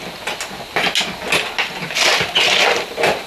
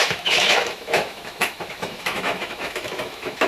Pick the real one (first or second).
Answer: first